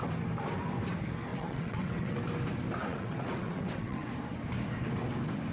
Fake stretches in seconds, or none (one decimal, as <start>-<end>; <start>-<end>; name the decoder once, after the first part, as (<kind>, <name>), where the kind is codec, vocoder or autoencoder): 1.3-2.2 (vocoder, WaveNeXt); 2.8-4.1